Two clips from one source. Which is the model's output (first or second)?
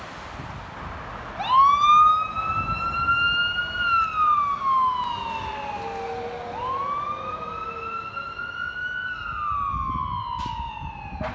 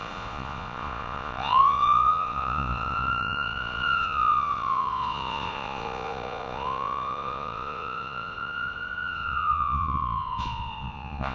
second